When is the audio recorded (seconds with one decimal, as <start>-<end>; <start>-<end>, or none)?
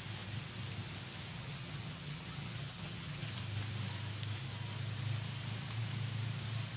0.0-1.3; 3.3-6.8